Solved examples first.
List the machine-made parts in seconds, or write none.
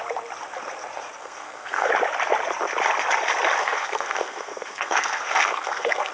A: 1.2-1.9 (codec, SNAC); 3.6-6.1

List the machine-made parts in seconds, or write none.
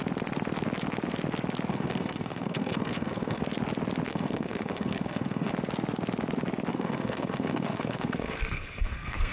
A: 1.7-3.4 (codec, SNAC); 4.1-5.5; 6.7-9.3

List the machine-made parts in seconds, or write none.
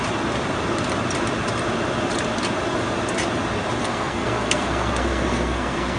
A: 3.8-6.0 (codec, SNAC)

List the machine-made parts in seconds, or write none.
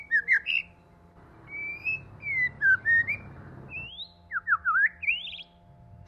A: none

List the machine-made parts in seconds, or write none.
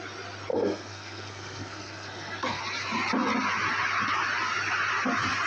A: 0.5-2.6 (codec, SNAC)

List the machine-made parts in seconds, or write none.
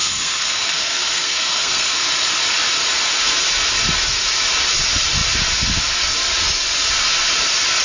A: 0.0-2.1 (codec, SNAC)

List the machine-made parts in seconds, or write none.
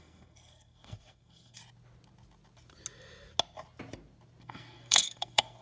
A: 0.0-1.6 (codec, SNAC); 4.4-5.6